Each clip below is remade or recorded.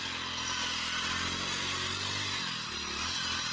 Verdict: recorded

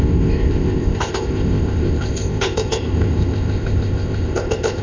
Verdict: remade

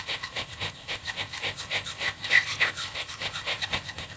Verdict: remade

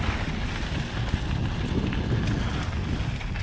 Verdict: recorded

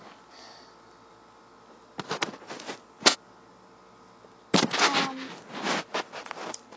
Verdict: recorded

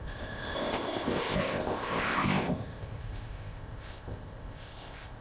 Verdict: remade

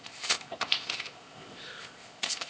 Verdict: remade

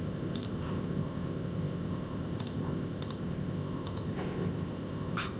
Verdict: remade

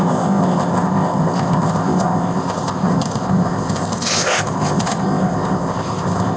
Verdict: remade